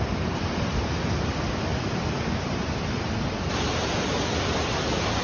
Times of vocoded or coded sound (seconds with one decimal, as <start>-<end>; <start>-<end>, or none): none